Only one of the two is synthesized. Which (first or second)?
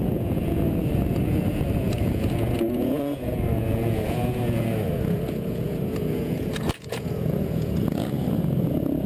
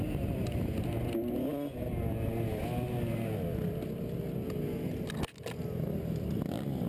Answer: first